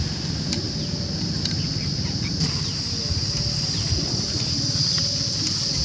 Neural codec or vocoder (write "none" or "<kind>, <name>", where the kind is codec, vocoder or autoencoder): none